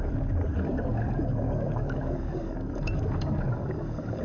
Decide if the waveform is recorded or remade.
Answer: remade